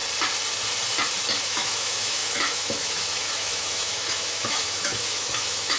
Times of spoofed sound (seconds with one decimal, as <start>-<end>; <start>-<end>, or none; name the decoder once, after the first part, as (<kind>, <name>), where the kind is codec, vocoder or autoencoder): 1.4-5.8 (autoencoder, DAC-VAE)